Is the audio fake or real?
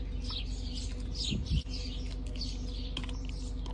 real